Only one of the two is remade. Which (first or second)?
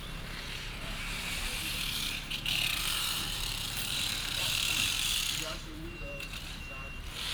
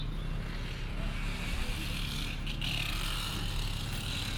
first